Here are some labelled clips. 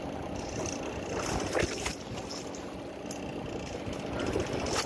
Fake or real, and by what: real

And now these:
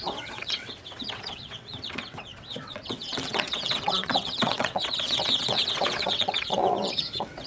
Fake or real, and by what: fake, vocoder, WaveNeXt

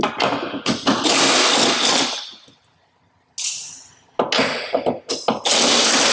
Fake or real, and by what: real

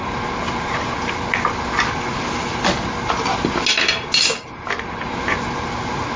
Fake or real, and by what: real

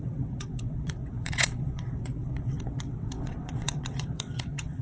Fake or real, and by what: fake, vocoder, WaveNeXt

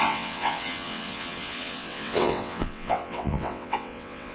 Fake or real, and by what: fake, vocoder, WaveNeXt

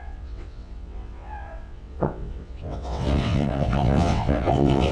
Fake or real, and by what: fake, vocoder, WaveNeXt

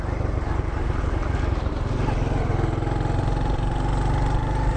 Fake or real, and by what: real